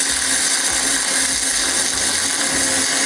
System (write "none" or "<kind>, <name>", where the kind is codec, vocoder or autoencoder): none